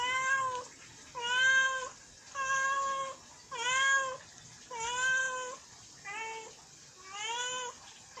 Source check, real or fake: real